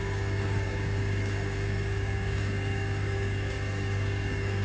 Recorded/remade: remade